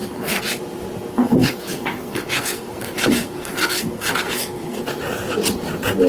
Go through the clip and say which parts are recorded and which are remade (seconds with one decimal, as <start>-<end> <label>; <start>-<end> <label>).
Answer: 0.0-0.6 remade; 0.6-1.1 recorded; 1.1-4.8 remade; 4.8-6.1 recorded